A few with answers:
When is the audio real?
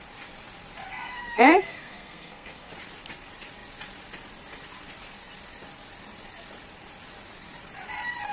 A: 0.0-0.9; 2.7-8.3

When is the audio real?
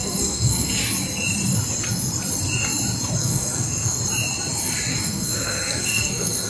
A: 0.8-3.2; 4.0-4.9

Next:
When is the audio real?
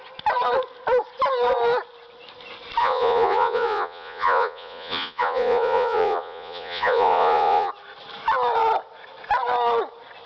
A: 0.0-2.8; 7.7-10.3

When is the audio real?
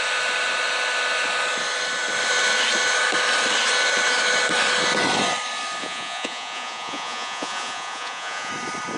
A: 0.0-5.8; 8.5-9.0